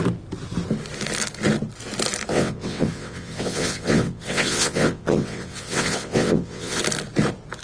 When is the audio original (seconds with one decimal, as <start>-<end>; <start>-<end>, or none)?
0.0-2.3; 6.8-7.6